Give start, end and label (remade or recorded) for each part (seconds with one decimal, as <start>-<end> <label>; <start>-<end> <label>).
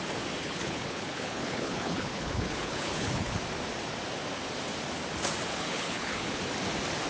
0.0-0.4 recorded; 0.4-3.4 remade; 3.4-5.5 recorded; 5.5-6.4 remade; 6.4-7.1 recorded